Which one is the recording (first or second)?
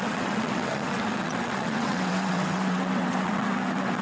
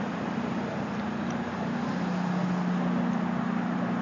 second